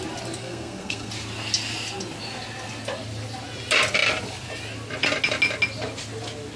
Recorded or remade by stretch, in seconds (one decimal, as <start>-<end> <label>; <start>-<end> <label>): 0.0-0.4 recorded; 0.4-1.1 remade; 1.1-6.6 recorded